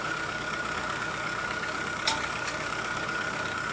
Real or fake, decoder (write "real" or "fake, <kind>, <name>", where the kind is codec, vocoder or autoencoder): fake, codec, DAC